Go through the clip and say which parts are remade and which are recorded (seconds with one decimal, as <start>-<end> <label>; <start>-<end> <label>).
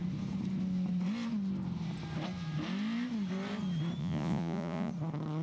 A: 0.0-4.0 recorded; 4.0-4.9 remade; 4.9-5.4 recorded